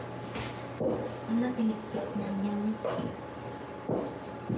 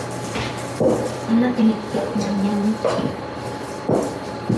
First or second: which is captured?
first